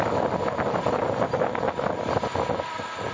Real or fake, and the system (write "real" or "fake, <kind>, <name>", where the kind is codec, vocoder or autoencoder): real